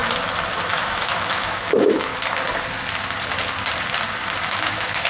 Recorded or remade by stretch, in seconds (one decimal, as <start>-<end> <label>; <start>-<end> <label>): 0.0-0.7 recorded; 0.7-2.1 remade; 2.1-4.4 recorded; 4.4-5.1 remade